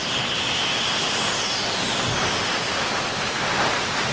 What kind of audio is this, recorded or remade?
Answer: recorded